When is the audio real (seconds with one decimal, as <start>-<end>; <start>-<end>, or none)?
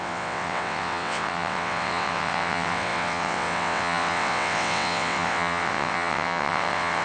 none